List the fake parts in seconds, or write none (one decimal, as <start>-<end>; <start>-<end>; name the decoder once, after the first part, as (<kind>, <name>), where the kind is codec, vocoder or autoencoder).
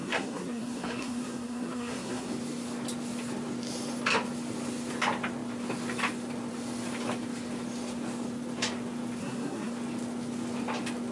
0.0-2.3 (codec, SNAC); 9.2-9.7